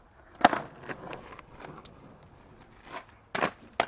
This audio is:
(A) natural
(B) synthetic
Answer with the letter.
A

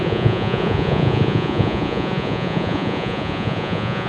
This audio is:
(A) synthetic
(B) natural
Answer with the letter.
A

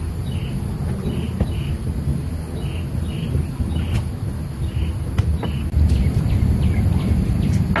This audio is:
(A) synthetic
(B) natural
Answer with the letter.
B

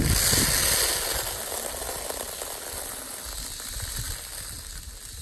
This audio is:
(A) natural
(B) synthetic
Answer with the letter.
A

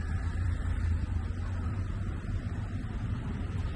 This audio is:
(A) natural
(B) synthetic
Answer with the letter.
B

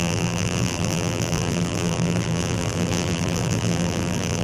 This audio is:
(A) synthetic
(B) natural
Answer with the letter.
A